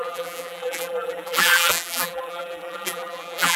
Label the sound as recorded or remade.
remade